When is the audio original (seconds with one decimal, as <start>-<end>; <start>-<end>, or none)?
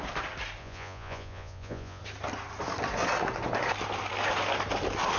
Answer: 0.0-0.6; 2.0-5.2